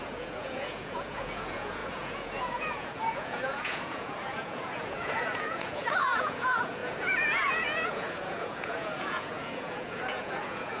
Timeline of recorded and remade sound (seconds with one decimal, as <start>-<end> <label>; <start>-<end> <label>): 0.0-10.8 remade